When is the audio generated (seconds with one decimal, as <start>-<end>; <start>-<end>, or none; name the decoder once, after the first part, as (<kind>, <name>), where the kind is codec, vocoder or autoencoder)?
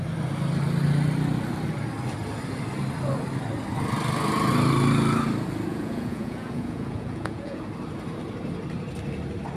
5.7-7.6 (vocoder, Vocos)